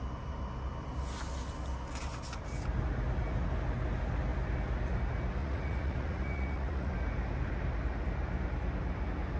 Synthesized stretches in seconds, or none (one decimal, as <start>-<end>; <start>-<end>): 5.4-6.9